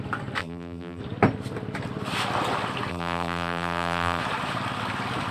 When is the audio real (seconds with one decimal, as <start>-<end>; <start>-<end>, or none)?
0.0-0.4; 1.0-2.9; 4.2-5.3